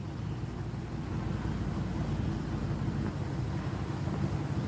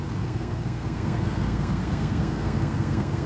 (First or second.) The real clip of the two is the first